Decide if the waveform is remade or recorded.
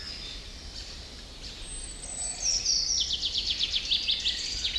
recorded